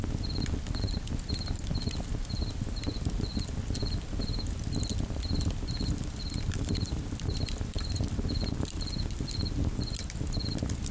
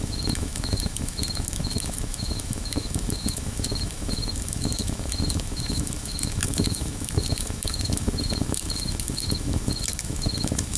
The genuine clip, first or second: first